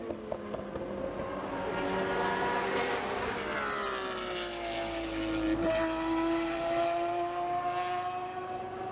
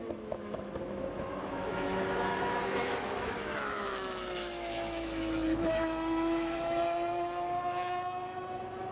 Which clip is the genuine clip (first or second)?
first